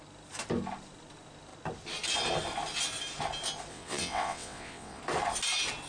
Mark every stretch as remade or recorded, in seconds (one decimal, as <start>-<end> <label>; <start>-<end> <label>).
0.0-3.7 recorded; 3.7-5.0 remade; 5.0-5.9 recorded